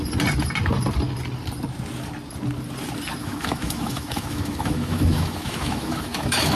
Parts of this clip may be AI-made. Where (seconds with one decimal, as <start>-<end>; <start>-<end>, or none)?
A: 3.2-6.6